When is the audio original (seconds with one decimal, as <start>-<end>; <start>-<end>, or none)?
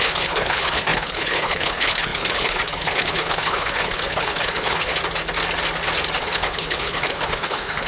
4.9-6.2